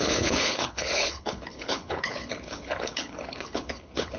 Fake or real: fake